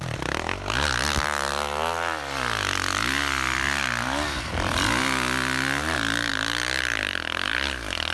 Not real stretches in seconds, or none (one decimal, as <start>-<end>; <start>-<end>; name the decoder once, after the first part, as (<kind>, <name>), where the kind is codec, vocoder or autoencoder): none